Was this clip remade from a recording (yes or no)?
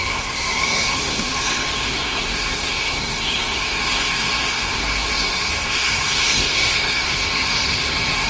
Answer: yes